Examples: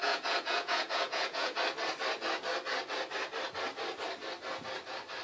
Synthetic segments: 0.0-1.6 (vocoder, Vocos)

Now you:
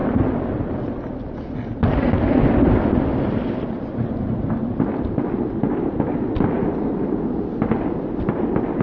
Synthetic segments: none

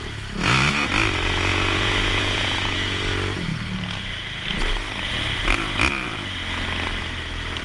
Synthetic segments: 1.5-3.0 (vocoder, Vocos)

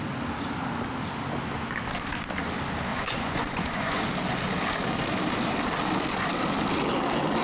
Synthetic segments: 2.9-4.0 (vocoder, Vocos)

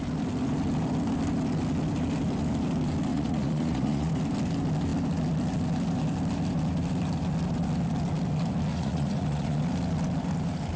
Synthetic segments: 3.1-4.1 (vocoder, Vocos); 8.7-9.6